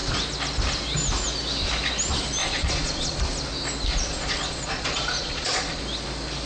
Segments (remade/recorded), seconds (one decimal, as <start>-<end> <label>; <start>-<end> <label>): 0.0-2.4 recorded; 2.4-3.2 remade; 3.2-3.9 recorded; 3.9-5.8 remade; 5.8-6.5 recorded